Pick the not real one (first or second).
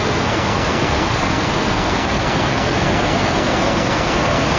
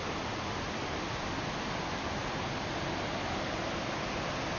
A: first